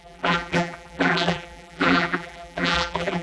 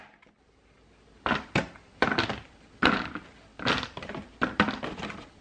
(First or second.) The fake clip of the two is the first